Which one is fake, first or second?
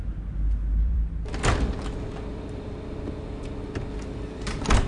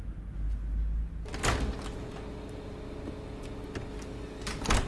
first